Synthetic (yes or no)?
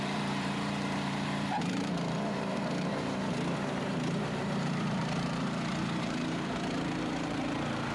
yes